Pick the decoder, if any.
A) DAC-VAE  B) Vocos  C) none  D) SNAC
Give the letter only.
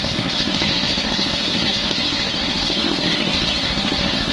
D